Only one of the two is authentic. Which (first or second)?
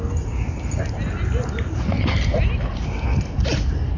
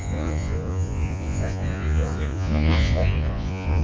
first